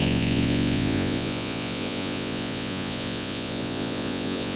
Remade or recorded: remade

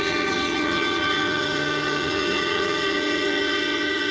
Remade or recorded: remade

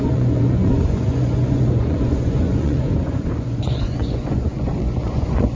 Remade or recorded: remade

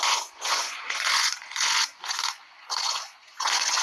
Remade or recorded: remade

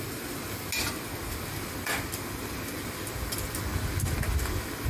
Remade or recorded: recorded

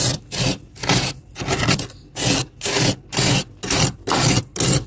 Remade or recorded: recorded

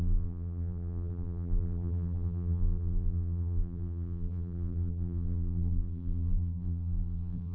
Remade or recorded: remade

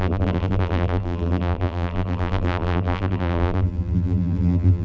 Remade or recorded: remade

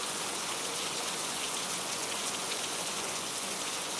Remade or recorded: remade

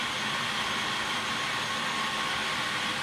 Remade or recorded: recorded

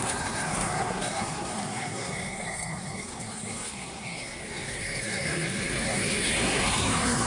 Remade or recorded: remade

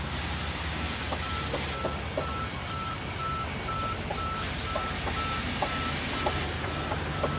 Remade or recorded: recorded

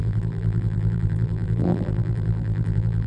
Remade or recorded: remade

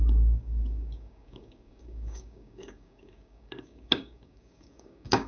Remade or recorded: remade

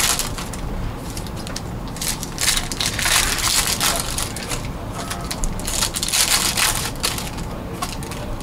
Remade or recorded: recorded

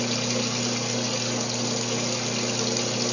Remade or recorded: recorded